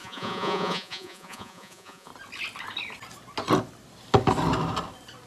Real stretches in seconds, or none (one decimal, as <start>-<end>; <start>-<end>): 2.1-5.3

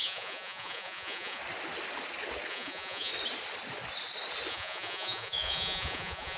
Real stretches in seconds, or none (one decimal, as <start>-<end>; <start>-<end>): 1.4-2.5; 3.1-4.5

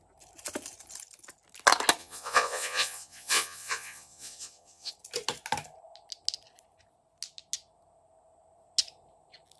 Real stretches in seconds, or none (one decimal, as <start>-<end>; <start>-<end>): 0.0-2.0; 4.9-9.6

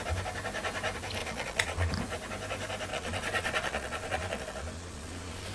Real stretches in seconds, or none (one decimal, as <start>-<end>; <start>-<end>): 0.0-1.2; 1.9-2.9